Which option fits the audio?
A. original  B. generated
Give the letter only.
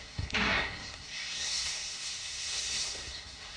B